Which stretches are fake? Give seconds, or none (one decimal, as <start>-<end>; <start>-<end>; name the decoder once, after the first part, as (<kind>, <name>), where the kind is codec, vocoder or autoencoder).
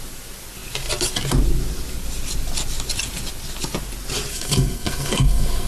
4.3-5.7 (codec, SNAC)